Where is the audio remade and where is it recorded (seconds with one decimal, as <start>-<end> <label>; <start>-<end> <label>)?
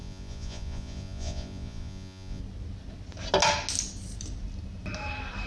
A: 0.0-2.4 remade; 2.4-5.5 recorded